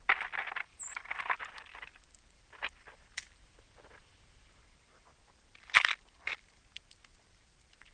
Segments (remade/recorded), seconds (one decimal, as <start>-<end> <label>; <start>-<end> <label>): 0.0-0.7 recorded; 0.7-4.6 remade; 4.6-7.9 recorded